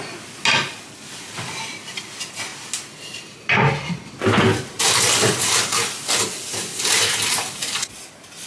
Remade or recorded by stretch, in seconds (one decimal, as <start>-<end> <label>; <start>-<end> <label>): 0.0-8.5 recorded